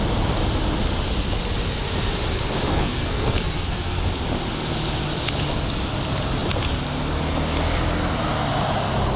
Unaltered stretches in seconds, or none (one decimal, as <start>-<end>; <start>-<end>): 0.0-2.7; 4.0-9.2